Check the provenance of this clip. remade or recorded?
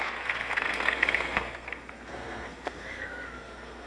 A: remade